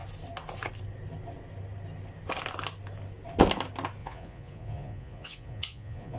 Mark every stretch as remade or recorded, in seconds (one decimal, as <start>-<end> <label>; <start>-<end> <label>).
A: 0.0-4.0 recorded; 4.0-6.2 remade